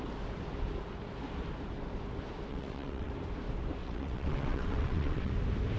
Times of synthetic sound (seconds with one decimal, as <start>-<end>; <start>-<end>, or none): 2.5-3.1; 3.8-5.3